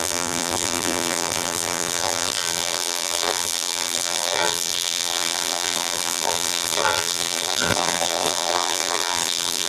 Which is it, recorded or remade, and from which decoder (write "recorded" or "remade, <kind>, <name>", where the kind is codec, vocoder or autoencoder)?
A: remade, vocoder, BigVGAN v2